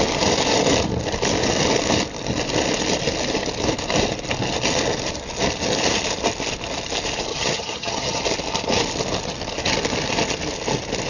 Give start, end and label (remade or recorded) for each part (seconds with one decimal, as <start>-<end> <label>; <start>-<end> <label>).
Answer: 0.0-7.3 recorded; 7.3-8.2 remade; 8.2-11.1 recorded